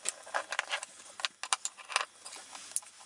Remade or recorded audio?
recorded